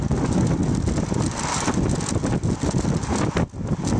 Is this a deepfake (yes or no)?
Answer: no